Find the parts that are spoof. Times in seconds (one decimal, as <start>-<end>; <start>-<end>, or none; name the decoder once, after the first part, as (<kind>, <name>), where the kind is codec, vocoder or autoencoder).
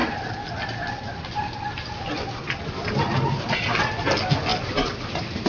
none